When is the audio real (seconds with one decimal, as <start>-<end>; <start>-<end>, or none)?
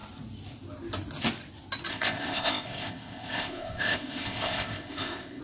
0.0-1.9